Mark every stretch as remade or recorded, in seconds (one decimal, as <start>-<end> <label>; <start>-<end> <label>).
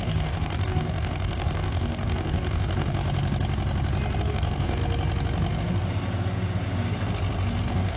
0.0-3.0 remade; 3.0-4.2 recorded; 4.2-4.8 remade; 4.8-7.6 recorded; 7.6-8.0 remade